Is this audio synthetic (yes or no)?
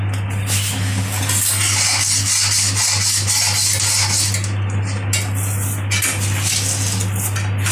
no